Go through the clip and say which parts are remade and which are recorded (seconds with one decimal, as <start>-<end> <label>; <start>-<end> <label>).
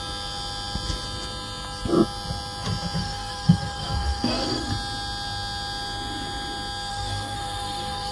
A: 0.0-3.0 recorded; 3.0-4.7 remade; 4.7-6.9 recorded; 6.9-8.1 remade